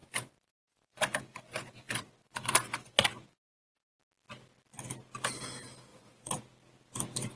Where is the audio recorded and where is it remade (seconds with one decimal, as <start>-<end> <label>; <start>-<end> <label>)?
0.0-4.0 remade; 4.0-5.9 recorded; 5.9-6.4 remade; 6.4-7.4 recorded